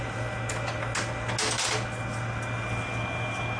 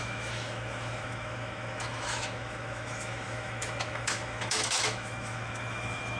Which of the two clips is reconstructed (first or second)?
second